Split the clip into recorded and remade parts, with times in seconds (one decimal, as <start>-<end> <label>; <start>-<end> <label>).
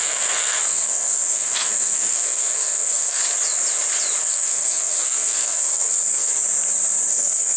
0.0-3.2 remade; 3.2-4.2 recorded; 4.2-6.3 remade; 6.3-7.1 recorded; 7.1-7.6 remade